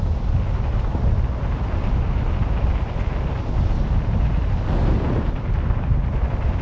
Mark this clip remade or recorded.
recorded